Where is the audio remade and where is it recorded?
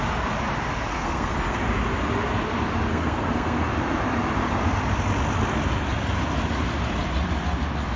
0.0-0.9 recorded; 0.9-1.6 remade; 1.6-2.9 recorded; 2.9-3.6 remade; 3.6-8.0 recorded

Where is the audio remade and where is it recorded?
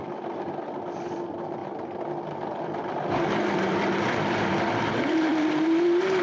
0.0-1.6 remade; 1.6-2.6 recorded; 2.6-6.2 remade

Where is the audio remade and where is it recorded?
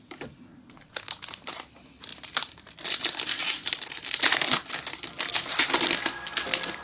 0.0-6.8 recorded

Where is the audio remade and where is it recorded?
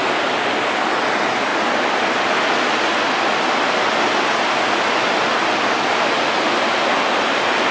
0.0-7.7 recorded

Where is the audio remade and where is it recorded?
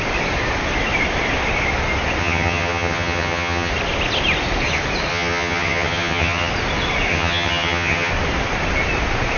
0.0-2.2 recorded; 2.2-3.7 remade; 3.7-5.1 recorded; 5.1-6.5 remade; 6.5-7.1 recorded; 7.1-8.1 remade; 8.1-9.4 recorded